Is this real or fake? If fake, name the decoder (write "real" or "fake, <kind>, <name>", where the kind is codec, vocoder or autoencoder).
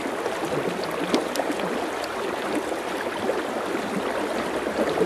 real